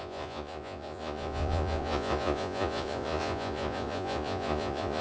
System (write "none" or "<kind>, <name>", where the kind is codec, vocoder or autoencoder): vocoder, Vocos